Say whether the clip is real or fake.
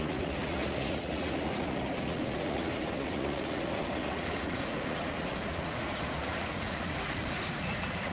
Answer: fake